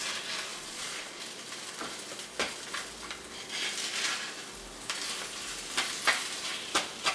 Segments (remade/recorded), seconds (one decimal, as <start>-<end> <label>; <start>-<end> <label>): 0.0-0.5 recorded; 0.5-1.2 remade; 1.2-7.1 recorded